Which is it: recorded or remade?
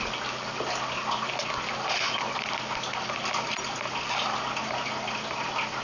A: recorded